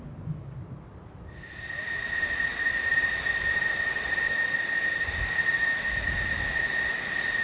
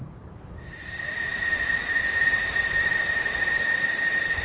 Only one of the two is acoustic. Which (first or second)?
first